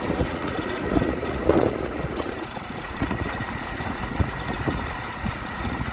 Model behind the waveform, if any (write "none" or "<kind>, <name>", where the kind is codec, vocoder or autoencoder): vocoder, Vocos